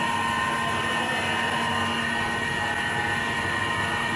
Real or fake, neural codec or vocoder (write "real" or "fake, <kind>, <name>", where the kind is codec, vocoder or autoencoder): real